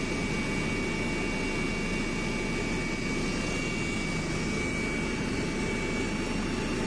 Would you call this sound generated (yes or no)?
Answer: no